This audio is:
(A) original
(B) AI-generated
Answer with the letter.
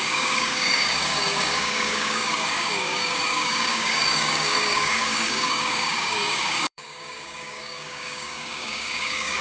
B